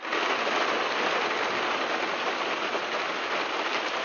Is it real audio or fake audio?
real